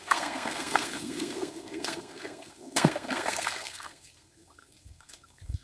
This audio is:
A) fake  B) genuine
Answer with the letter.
A